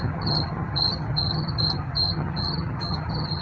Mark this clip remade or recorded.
remade